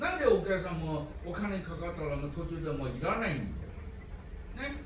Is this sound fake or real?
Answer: real